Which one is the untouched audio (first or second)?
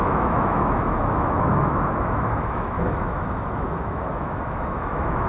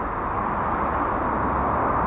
second